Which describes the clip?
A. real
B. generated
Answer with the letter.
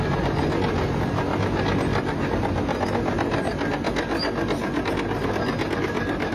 A